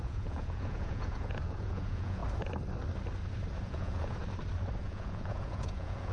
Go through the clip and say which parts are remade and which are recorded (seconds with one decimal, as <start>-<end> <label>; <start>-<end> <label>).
0.0-2.2 remade; 2.2-3.6 recorded; 3.6-4.2 remade; 4.2-4.8 recorded; 4.8-6.1 remade